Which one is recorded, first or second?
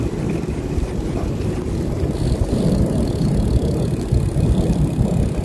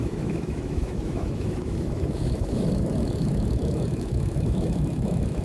first